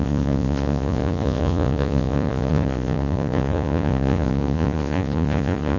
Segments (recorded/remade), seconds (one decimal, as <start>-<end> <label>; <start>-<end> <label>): 0.0-5.8 remade